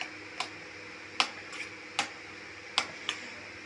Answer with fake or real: real